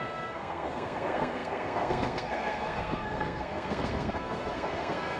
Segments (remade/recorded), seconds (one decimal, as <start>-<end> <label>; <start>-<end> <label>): 0.0-5.2 remade